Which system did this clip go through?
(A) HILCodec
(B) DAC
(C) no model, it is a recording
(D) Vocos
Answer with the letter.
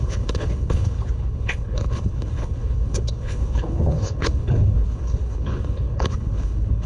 A